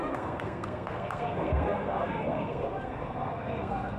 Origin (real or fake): fake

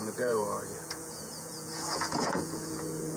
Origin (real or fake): fake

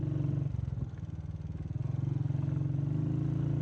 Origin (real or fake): real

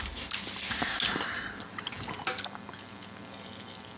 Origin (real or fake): real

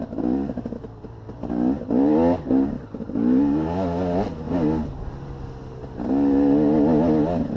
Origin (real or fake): real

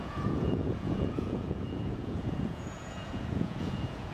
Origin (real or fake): fake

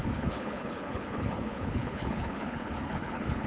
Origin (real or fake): fake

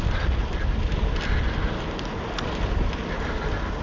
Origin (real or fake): real